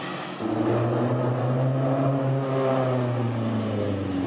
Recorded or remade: recorded